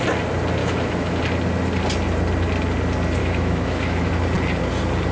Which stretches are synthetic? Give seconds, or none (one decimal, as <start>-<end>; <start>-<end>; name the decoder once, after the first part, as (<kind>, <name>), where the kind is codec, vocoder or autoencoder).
0.6-1.2 (autoencoder, DAC-VAE); 3.2-4.1